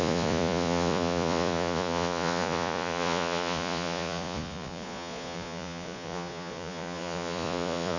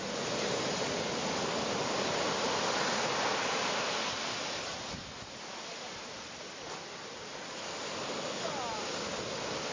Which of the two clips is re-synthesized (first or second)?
first